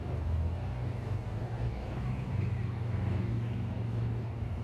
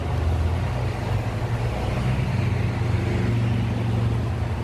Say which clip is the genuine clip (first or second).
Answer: second